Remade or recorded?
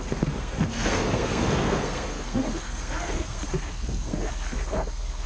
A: remade